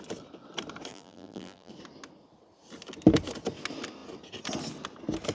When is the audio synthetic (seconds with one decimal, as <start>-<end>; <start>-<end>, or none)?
0.9-1.7